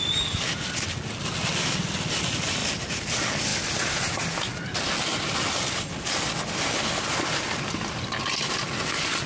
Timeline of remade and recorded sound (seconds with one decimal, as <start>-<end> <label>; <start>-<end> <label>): 0.0-9.3 recorded